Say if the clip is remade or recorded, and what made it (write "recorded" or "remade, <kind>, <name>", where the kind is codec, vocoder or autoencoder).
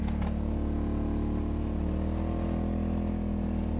recorded